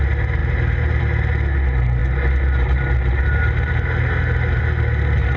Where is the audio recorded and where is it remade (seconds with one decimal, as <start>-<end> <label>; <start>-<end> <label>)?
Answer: 0.0-5.4 recorded